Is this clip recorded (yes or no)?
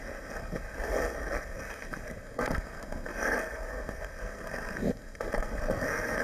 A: no